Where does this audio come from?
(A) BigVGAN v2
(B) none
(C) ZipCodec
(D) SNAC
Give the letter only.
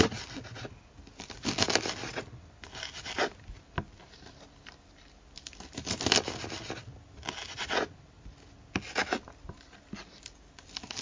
B